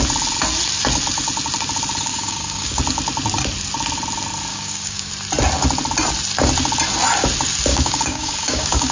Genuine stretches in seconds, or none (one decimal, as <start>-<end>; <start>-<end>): 0.0-2.1; 2.8-4.5; 5.1-7.7